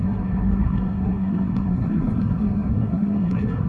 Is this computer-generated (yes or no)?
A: yes